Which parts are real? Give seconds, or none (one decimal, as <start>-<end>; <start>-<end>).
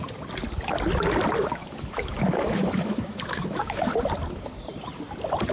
0.0-1.4; 3.9-5.5